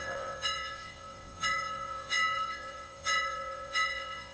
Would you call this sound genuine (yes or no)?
no